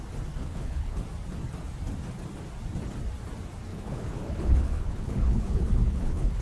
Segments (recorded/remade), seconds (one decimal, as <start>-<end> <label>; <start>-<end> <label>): 0.0-0.4 recorded; 0.4-1.0 remade; 1.0-3.7 recorded; 3.7-6.4 remade